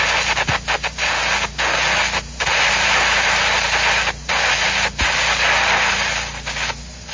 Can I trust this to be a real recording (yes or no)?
yes